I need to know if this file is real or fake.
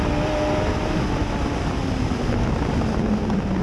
real